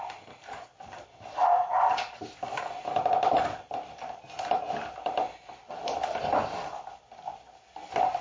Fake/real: real